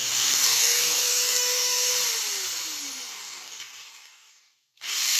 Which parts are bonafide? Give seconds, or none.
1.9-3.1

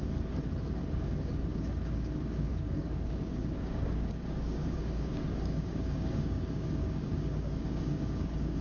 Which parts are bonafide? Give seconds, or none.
0.0-0.9

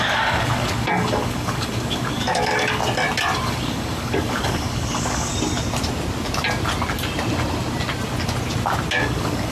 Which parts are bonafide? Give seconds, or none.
2.8-3.4; 5.3-9.0